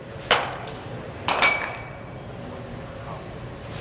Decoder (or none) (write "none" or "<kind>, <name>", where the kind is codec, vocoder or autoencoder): none